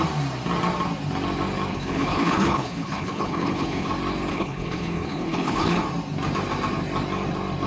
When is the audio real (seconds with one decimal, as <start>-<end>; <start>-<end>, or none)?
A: 0.0-1.7; 3.9-4.3; 5.8-7.7